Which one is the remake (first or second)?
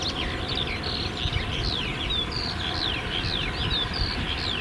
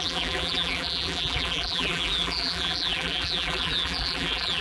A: second